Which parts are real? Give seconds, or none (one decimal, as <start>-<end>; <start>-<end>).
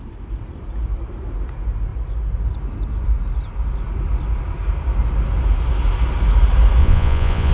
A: 0.0-6.8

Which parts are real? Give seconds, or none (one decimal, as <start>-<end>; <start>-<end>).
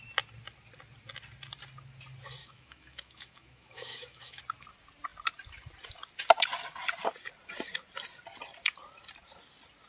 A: 0.0-2.4; 4.4-9.9